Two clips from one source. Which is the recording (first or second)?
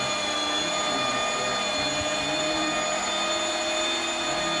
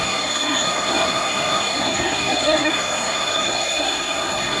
first